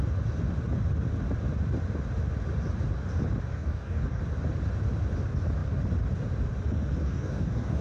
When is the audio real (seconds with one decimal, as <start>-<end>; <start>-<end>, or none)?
0.0-3.5; 4.2-7.0